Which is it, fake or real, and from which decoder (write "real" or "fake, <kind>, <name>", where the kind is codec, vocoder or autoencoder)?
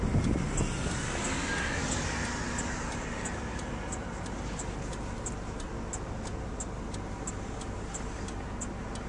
real